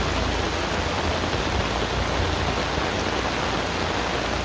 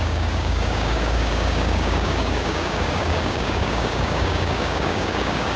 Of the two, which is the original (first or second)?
first